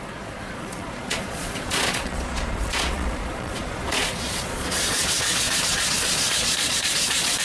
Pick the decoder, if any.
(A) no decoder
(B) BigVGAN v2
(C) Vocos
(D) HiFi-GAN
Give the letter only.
C